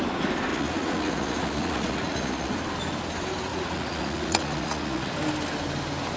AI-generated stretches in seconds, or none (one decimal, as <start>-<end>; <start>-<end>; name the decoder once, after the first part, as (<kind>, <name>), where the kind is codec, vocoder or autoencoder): 0.5-2.5 (vocoder, Vocos); 3.5-5.1